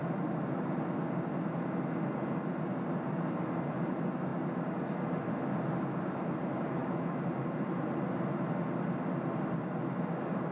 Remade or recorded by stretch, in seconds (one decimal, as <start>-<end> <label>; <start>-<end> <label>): 0.0-10.5 recorded

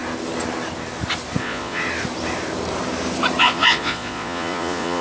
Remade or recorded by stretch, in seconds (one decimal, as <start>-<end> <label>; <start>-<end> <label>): 0.0-1.4 recorded; 1.4-1.8 remade; 1.8-3.4 recorded; 3.4-5.0 remade

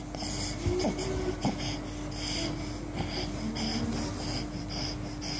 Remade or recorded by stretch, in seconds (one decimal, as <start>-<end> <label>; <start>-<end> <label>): 0.0-5.4 recorded

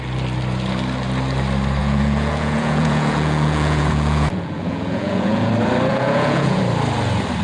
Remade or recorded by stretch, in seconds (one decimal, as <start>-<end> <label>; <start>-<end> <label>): 0.0-1.8 recorded; 1.8-5.5 remade; 5.5-5.9 recorded; 5.9-6.6 remade; 6.6-7.4 recorded

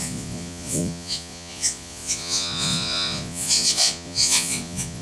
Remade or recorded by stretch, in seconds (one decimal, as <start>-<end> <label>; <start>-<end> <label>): 0.0-5.0 remade

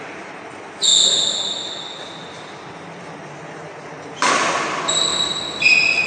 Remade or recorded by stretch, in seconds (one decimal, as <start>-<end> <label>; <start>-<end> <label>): 0.0-6.1 recorded

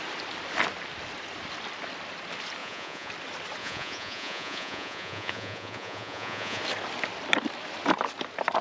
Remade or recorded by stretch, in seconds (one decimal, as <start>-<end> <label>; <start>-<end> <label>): 0.0-2.6 recorded; 2.6-3.1 remade; 3.1-3.6 recorded; 3.6-6.6 remade; 6.6-8.6 recorded